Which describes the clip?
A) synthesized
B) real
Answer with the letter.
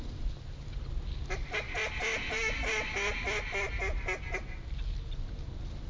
B